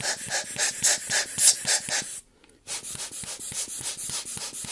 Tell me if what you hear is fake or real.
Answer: real